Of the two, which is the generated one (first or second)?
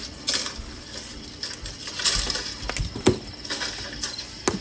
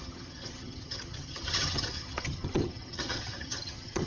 second